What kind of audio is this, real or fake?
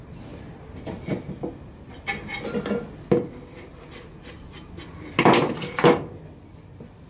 real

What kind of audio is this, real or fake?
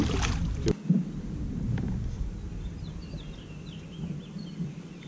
real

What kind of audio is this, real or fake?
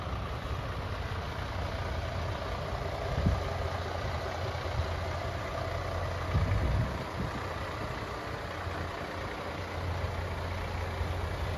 real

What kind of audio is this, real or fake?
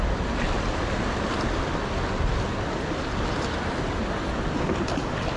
real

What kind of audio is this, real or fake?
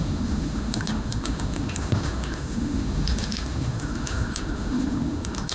fake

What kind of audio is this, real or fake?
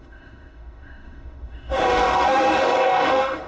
fake